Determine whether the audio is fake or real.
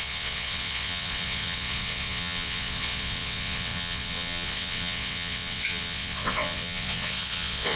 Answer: fake